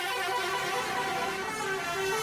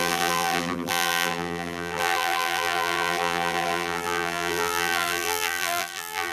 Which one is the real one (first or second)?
first